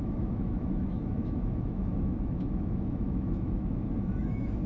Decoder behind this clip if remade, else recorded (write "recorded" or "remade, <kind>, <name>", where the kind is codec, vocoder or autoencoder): remade, autoencoder, DAC-VAE